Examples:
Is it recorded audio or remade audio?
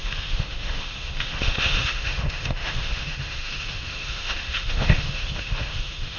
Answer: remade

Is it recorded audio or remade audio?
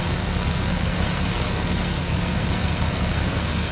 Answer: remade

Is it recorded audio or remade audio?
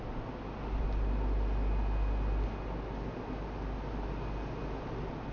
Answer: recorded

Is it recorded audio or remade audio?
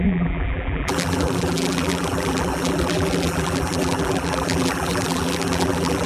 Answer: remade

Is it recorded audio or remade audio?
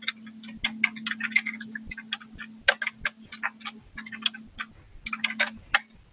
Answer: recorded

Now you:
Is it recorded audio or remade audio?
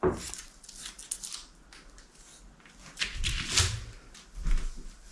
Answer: recorded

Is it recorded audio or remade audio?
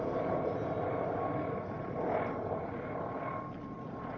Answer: recorded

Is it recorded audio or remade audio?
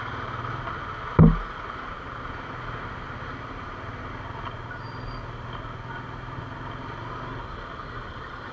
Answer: recorded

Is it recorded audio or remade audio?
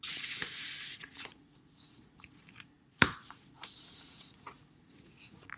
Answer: remade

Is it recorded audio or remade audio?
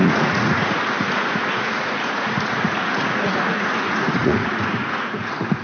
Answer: remade